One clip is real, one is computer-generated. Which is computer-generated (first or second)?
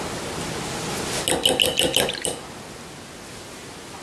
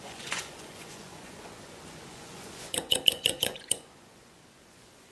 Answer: second